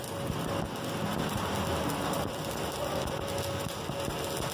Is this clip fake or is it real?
real